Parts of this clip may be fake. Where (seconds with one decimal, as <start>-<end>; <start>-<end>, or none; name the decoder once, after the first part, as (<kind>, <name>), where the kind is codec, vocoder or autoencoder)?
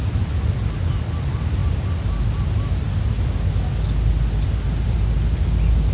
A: none